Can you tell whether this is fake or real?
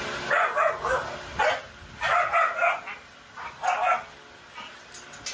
real